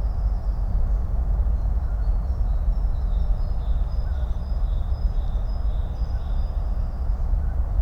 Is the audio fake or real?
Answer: real